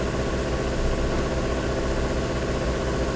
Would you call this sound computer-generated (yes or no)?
no